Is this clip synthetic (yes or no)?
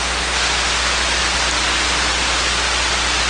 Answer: no